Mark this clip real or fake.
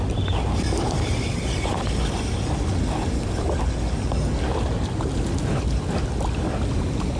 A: real